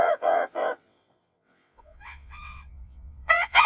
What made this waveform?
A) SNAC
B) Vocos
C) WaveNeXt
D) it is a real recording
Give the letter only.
C